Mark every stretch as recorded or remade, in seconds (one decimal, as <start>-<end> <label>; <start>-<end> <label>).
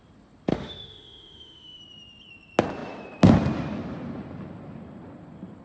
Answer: 0.0-0.5 recorded; 0.5-1.8 remade; 1.8-5.6 recorded